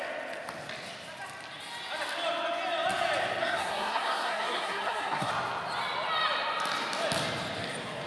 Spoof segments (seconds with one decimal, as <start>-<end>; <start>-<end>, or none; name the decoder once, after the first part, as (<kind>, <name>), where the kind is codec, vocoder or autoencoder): 3.4-5.3 (codec, SNAC)